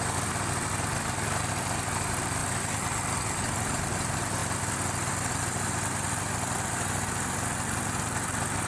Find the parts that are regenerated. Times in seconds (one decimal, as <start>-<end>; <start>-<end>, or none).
none